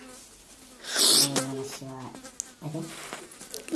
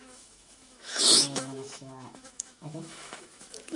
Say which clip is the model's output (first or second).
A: second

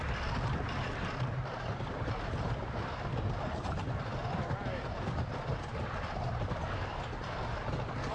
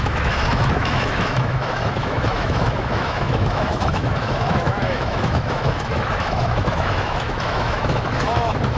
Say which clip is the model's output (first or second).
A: second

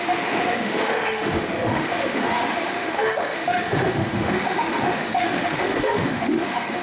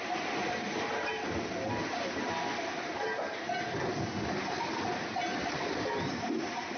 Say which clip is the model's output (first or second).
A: first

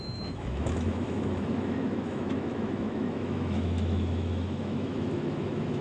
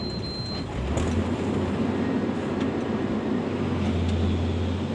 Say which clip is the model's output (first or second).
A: first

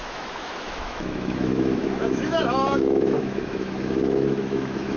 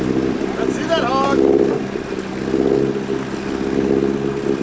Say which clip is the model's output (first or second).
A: first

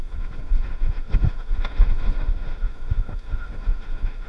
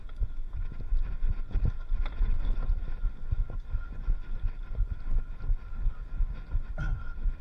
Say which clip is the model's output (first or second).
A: first